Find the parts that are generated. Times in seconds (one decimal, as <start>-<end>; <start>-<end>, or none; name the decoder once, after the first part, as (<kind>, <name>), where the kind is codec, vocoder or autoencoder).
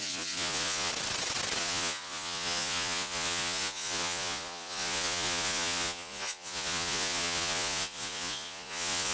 0.0-0.9 (vocoder, Vocos); 1.6-9.1